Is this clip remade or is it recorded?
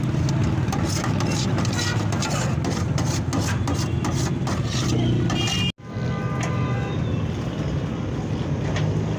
recorded